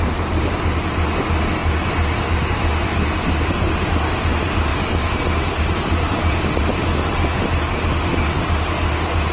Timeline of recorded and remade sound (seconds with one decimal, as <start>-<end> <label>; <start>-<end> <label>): 0.0-4.7 recorded; 4.7-6.6 remade; 6.6-9.3 recorded